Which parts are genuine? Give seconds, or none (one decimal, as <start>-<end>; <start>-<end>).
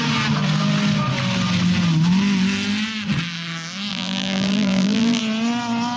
0.0-3.9; 5.2-6.0